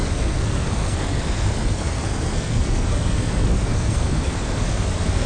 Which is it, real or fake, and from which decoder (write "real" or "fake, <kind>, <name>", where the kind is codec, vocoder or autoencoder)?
fake, codec, SNAC